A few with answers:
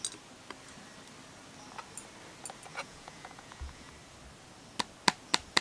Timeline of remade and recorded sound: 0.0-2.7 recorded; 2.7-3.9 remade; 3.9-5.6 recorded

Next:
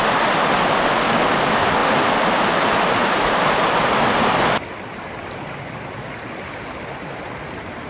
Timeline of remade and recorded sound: 0.0-7.9 recorded